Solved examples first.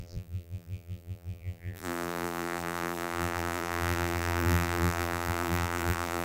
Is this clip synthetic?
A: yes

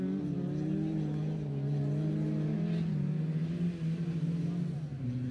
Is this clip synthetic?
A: no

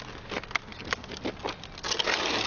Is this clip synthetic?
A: no